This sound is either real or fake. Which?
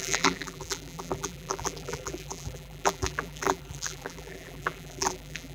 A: fake